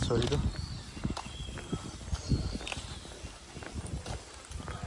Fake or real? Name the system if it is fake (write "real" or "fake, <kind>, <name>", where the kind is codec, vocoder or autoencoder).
real